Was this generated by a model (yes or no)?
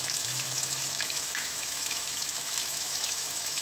yes